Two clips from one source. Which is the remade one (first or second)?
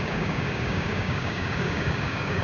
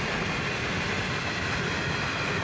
first